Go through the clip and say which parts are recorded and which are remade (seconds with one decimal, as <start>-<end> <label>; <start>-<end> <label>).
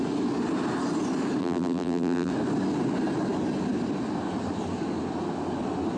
0.0-1.4 recorded; 1.4-2.3 remade; 2.3-6.0 recorded